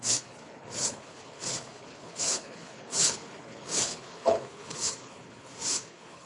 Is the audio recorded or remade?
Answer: remade